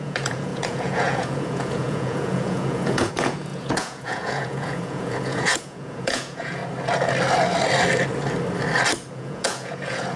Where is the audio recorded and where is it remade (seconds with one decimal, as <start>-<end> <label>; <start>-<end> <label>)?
0.0-6.6 remade; 6.6-9.1 recorded; 9.1-10.2 remade